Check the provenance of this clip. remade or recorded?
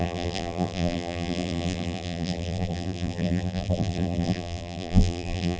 remade